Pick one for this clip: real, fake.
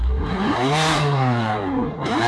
fake